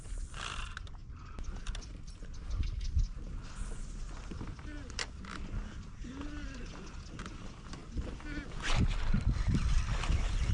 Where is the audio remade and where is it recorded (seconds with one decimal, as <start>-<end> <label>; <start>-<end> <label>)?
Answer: 0.0-10.5 recorded